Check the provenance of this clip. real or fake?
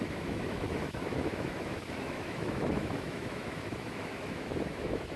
fake